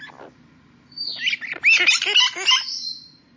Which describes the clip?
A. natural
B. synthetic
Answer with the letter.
A